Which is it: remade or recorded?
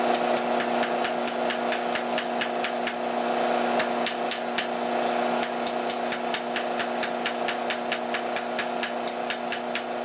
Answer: recorded